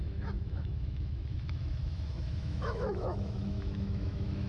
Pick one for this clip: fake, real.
fake